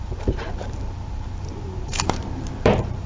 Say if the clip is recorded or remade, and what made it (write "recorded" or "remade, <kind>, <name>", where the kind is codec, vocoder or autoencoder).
remade, vocoder, BigVGAN v2